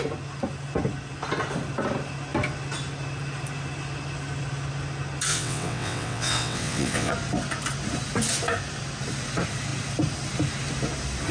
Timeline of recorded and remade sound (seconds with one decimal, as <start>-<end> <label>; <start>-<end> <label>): 0.0-5.3 recorded; 5.3-7.1 remade; 7.1-11.3 recorded